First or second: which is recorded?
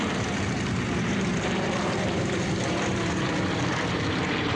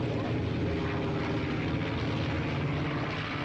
second